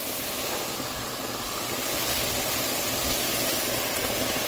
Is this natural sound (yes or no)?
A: yes